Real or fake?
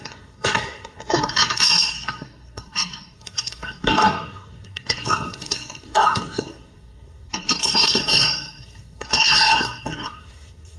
fake